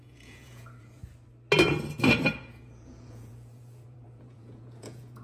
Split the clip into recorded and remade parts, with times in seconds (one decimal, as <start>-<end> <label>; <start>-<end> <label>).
0.0-1.0 remade; 1.0-2.4 recorded; 2.4-5.2 remade